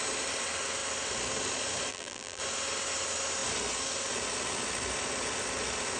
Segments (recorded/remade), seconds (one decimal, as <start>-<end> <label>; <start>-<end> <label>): 0.0-1.9 recorded; 1.9-2.4 remade; 2.4-6.0 recorded